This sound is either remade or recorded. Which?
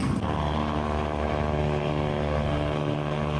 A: remade